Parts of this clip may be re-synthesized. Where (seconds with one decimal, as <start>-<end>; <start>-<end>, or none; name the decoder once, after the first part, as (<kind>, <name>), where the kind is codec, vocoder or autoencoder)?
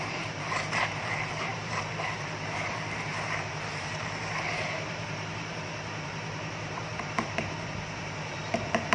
0.0-8.9 (vocoder, BigVGAN v2)